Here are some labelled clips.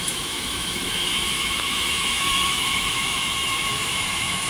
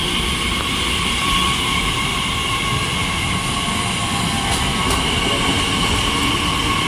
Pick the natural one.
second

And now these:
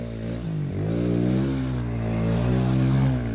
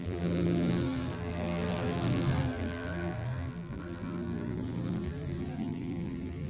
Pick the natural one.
first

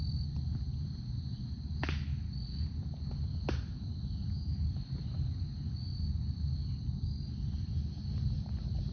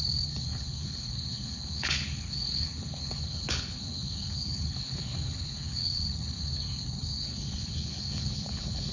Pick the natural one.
first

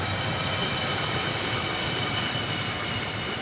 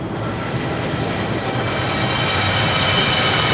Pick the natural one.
second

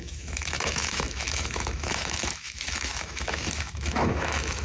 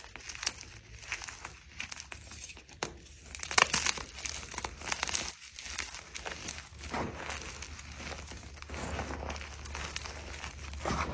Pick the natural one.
second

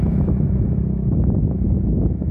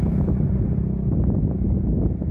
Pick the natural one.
second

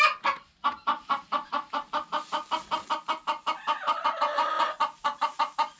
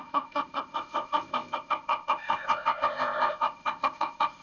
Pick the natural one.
first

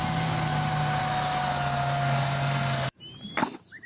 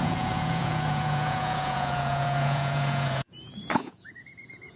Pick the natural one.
first